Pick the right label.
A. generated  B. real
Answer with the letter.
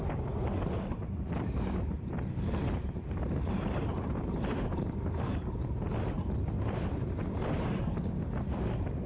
B